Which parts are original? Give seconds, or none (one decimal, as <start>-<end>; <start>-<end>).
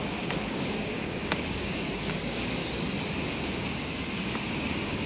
2.6-3.3